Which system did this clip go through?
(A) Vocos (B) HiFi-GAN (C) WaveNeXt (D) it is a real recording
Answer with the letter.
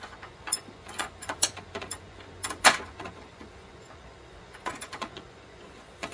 A